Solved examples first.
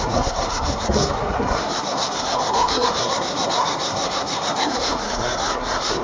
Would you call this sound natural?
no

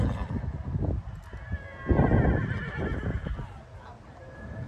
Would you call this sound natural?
yes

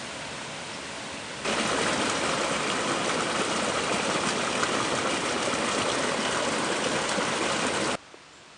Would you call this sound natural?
yes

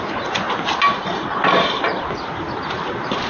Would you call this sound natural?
yes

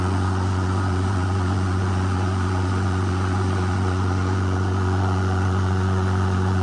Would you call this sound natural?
no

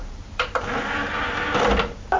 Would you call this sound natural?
no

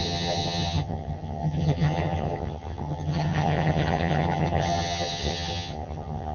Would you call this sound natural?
no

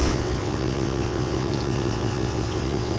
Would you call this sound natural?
no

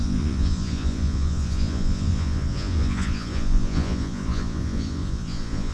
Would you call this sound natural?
no